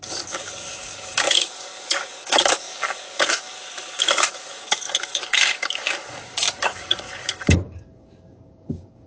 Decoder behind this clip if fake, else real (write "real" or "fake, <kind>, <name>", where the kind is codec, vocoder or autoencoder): fake, codec, DAC